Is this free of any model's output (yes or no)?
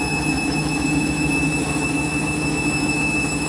no